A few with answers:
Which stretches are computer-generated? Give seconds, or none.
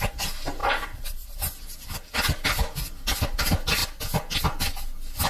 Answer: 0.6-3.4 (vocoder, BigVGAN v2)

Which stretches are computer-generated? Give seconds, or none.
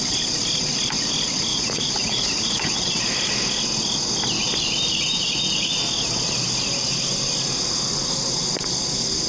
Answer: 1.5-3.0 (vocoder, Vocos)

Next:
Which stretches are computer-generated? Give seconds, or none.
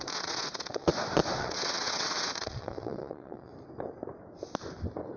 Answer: 0.0-0.9 (vocoder, WaveNeXt); 1.4-3.5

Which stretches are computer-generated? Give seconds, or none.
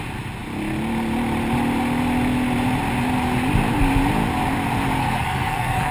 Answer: 5.0-5.9 (codec, SNAC)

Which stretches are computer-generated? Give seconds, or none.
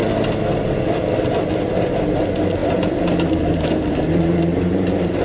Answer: 1.9-5.2 (vocoder, BigVGAN v2)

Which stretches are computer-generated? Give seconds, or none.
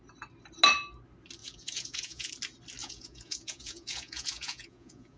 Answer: 1.4-2.3 (vocoder, Vocos); 2.8-5.2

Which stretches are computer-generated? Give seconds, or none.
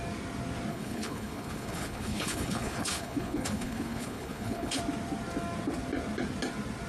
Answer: 0.7-4.8 (codec, HILCodec)